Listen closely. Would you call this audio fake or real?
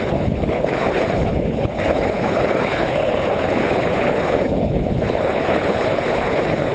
fake